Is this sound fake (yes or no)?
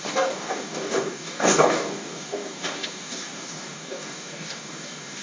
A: yes